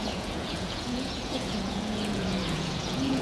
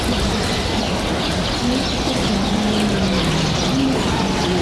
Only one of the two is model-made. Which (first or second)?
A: first